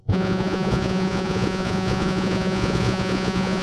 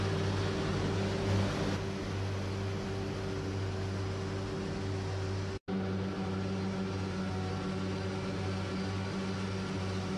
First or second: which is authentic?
second